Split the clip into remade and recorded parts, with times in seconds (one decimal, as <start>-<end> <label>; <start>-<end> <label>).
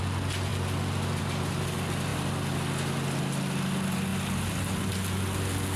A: 0.0-5.8 recorded